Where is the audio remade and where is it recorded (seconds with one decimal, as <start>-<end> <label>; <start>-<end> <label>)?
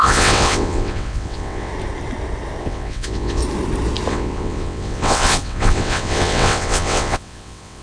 0.0-1.7 remade; 1.7-2.6 recorded; 2.6-3.4 remade; 3.4-4.1 recorded; 4.1-7.8 remade